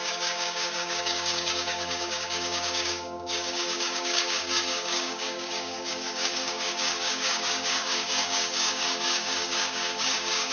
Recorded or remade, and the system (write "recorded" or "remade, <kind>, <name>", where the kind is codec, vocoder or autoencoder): remade, codec, DAC